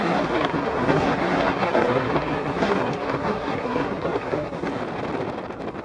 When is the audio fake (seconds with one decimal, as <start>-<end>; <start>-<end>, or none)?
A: 0.0-4.8

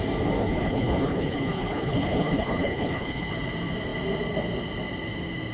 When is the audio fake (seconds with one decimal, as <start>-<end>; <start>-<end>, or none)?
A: 0.4-3.3

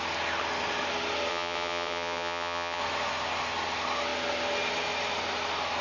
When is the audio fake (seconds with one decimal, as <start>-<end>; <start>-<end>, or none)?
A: 1.3-2.8

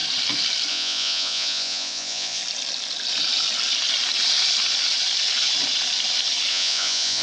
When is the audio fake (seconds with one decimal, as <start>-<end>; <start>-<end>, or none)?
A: 0.7-2.4; 6.5-7.2